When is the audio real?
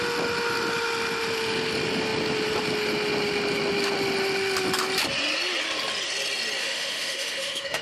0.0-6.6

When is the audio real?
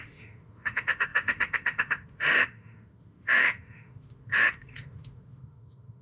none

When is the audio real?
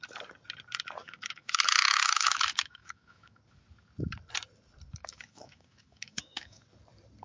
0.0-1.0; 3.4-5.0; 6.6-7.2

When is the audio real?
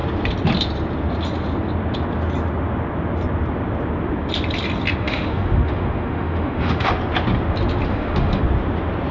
0.0-5.0; 6.9-7.9; 8.4-9.1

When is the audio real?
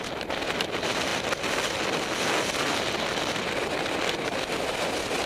0.0-5.3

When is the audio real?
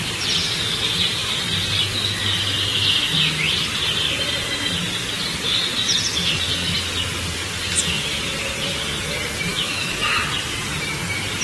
0.0-9.5; 10.2-11.4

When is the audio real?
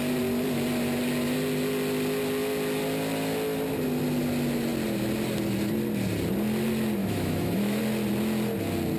0.0-7.0; 7.8-9.0